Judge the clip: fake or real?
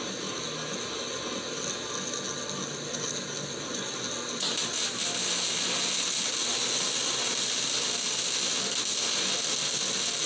real